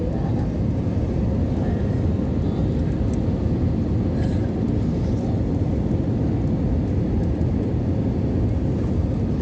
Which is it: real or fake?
real